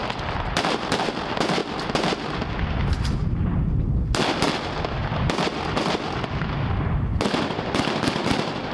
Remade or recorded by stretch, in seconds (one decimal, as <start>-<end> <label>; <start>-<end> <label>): 0.0-8.7 recorded